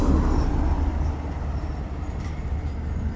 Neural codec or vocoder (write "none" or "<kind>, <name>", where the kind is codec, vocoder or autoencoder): none